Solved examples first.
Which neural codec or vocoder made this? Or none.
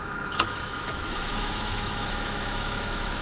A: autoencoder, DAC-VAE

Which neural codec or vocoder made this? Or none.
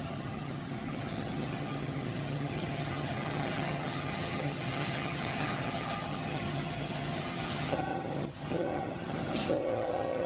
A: vocoder, HiFi-GAN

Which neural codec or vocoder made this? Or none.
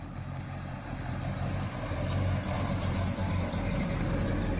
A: none